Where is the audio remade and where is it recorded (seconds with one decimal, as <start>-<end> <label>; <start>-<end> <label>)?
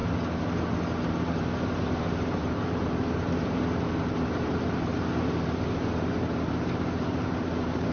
0.0-1.0 recorded; 1.0-7.9 remade